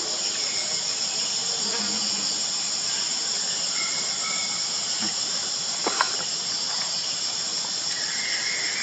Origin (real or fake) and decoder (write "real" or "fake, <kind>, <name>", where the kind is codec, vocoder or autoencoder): real